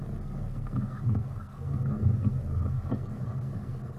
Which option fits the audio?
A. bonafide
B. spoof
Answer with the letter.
B